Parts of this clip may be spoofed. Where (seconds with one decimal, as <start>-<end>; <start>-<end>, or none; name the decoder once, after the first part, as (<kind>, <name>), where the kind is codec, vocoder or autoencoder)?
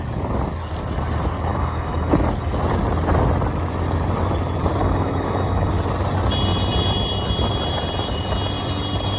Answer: 1.5-2.1 (autoencoder, DAC-VAE); 4.8-5.7